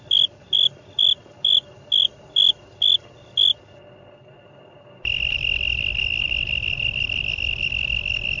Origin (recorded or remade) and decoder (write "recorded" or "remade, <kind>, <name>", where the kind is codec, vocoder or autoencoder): recorded